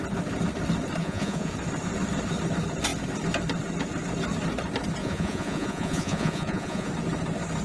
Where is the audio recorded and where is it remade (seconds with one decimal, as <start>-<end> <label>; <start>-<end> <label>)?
0.0-1.0 recorded; 1.0-1.5 remade; 1.5-5.0 recorded; 5.0-6.9 remade; 6.9-7.6 recorded